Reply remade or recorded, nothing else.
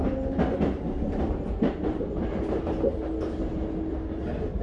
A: recorded